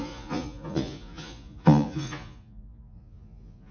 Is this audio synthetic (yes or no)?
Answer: yes